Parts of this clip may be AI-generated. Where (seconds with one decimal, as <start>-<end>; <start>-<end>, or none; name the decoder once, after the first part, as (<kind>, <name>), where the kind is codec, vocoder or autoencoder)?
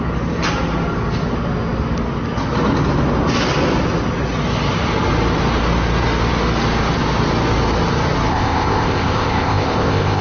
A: 8.3-10.2 (codec, ZipCodec)